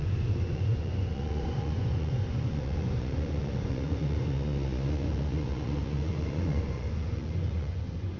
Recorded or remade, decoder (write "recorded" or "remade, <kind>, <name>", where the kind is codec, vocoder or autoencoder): remade, vocoder, Vocos